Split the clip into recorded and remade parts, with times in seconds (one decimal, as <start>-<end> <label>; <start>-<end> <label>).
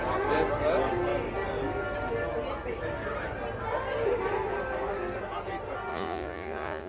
0.0-5.9 recorded; 5.9-6.9 remade